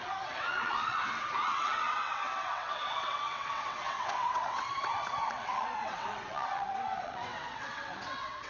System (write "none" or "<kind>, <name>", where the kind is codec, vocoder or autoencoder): vocoder, WaveNeXt